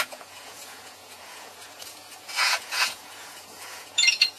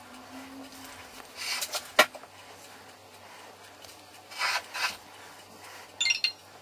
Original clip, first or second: second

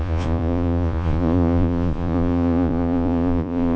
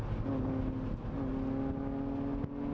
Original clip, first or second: second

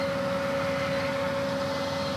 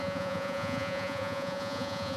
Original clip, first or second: first